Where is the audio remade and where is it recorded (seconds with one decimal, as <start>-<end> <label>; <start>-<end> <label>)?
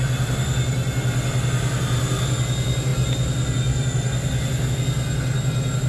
0.0-5.9 recorded